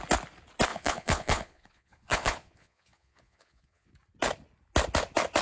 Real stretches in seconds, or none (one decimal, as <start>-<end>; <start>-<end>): 0.0-0.7; 3.9-5.4

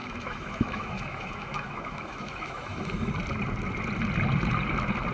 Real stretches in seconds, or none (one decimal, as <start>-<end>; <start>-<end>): 3.1-5.1

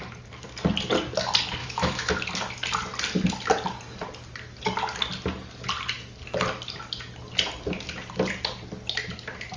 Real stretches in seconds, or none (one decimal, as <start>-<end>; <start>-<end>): 0.0-1.6; 2.1-9.6

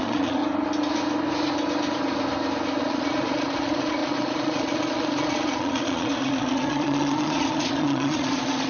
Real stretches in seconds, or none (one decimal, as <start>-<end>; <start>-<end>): 0.4-2.8